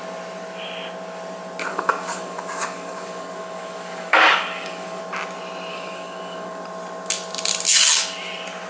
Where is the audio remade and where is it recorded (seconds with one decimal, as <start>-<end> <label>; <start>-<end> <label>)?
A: 0.0-1.7 recorded; 1.7-5.0 remade; 5.0-5.7 recorded; 5.7-6.6 remade; 6.6-8.7 recorded